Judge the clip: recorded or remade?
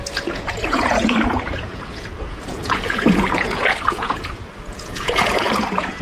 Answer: remade